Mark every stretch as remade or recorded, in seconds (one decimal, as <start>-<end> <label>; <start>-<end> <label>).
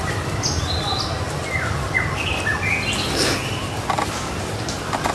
0.0-5.1 recorded